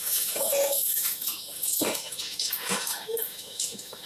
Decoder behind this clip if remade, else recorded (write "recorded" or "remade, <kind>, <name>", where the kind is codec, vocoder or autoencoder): remade, autoencoder, DAC-VAE